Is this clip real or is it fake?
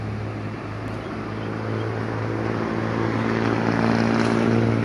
real